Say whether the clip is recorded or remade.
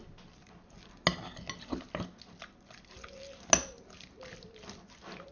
recorded